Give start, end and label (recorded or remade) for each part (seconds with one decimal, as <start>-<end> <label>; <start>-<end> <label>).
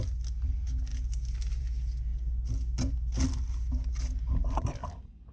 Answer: 0.0-5.3 recorded